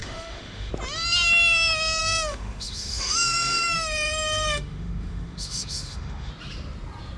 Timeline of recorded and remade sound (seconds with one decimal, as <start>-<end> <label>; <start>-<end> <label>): 0.0-0.7 remade; 0.7-2.0 recorded; 2.0-6.3 remade; 6.3-7.2 recorded